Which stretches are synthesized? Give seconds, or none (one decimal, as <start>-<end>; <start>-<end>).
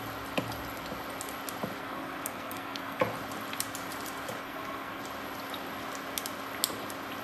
1.8-3.0; 4.4-5.0